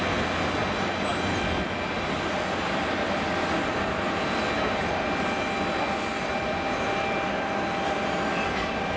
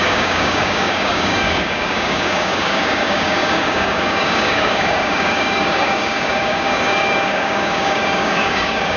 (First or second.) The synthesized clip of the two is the second